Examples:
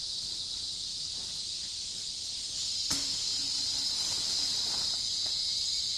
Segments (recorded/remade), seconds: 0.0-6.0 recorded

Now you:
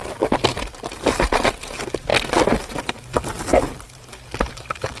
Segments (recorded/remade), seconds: 0.0-2.1 remade; 2.1-2.7 recorded; 2.7-5.0 remade

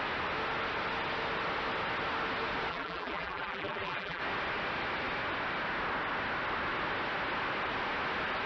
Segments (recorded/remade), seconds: 0.0-2.7 recorded; 2.7-4.2 remade; 4.2-8.5 recorded

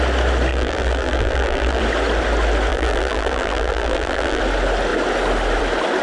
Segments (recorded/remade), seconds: 0.0-0.5 recorded; 0.5-1.8 remade; 1.8-2.7 recorded; 2.7-4.4 remade; 4.4-6.0 recorded

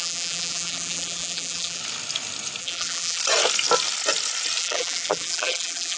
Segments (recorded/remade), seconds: 0.0-1.8 remade; 1.8-2.6 recorded; 2.6-3.2 remade; 3.2-4.6 recorded; 4.6-6.0 remade